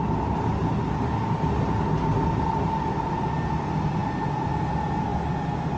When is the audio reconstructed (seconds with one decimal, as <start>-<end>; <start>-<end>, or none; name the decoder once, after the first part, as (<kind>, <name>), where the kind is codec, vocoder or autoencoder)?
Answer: none